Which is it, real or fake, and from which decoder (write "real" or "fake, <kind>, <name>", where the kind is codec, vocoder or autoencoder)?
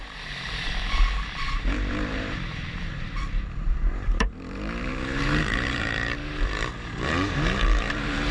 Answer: fake, vocoder, BigVGAN v2